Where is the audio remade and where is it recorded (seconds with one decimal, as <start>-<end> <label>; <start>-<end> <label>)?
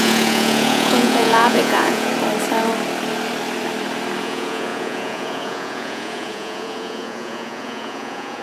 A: 0.0-2.1 remade; 2.1-4.2 recorded; 4.2-8.4 remade